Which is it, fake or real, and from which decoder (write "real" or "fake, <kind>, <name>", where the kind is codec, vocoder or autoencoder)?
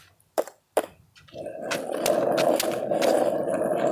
real